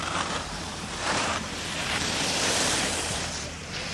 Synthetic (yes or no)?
yes